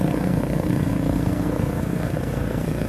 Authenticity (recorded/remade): remade